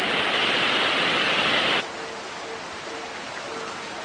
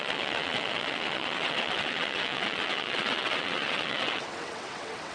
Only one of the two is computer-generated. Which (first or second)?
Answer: second